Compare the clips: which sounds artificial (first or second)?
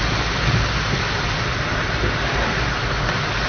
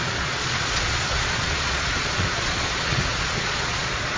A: second